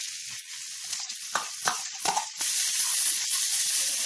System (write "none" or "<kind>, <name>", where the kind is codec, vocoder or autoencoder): vocoder, Vocos